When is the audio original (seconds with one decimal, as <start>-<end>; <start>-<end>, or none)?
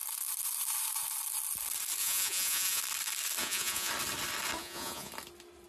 0.0-2.0; 2.8-3.4; 3.9-4.6; 5.1-5.7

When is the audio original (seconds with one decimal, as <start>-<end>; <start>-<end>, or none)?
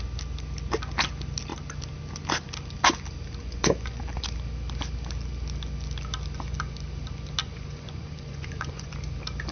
0.0-3.4; 4.0-7.4; 8.9-9.5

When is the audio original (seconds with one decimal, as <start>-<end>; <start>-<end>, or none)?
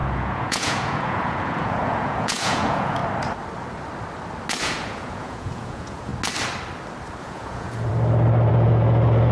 3.0-4.6; 6.1-7.2; 7.9-8.5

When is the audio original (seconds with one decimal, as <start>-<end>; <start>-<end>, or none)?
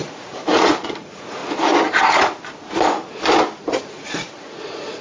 1.4-3.8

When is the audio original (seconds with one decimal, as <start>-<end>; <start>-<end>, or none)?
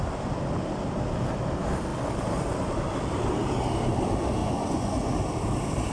0.0-4.4; 5.1-5.9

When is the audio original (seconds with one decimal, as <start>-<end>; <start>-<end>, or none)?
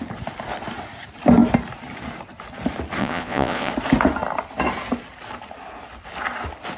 0.0-3.0; 3.7-6.8